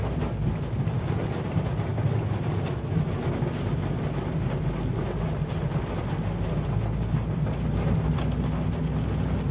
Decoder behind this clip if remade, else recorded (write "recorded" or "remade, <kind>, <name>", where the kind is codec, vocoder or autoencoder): recorded